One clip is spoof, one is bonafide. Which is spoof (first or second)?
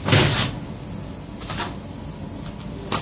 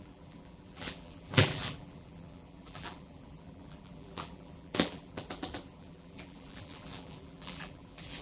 second